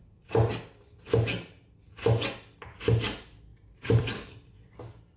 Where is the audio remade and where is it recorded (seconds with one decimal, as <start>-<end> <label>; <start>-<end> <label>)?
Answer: 0.0-3.5 recorded; 3.5-5.2 remade